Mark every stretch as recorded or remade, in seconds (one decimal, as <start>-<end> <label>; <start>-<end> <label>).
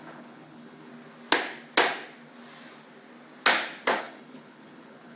0.0-0.9 remade; 0.9-4.0 recorded; 4.0-5.2 remade